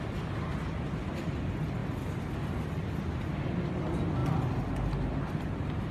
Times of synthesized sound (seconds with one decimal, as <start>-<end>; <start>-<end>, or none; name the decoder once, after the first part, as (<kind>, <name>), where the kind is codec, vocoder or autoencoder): none